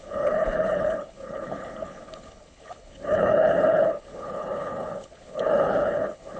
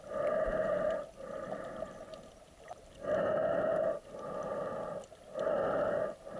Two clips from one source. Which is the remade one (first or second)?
first